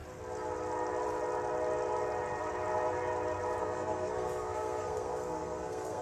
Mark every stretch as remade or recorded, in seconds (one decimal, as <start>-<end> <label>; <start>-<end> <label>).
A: 0.0-3.6 recorded; 3.6-6.0 remade